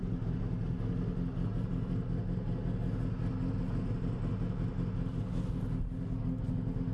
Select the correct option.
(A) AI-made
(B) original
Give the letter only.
B